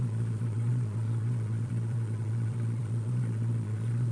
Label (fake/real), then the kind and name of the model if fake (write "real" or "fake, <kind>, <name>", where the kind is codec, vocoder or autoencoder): fake, vocoder, Vocos